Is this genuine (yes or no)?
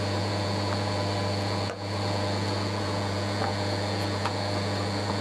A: no